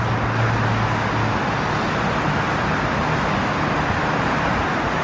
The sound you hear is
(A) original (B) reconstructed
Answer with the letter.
A